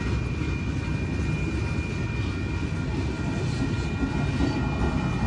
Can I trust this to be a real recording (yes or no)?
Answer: yes